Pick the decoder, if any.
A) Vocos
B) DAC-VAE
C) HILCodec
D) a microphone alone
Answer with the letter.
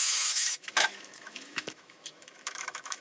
B